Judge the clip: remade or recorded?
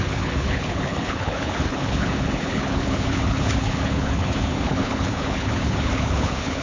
remade